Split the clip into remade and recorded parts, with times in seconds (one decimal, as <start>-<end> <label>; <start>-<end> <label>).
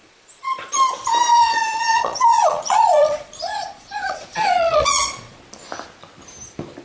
0.0-0.6 remade; 0.6-1.3 recorded; 1.3-5.4 remade; 5.4-6.8 recorded